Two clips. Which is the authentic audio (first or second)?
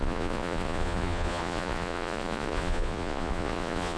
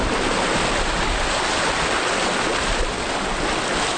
second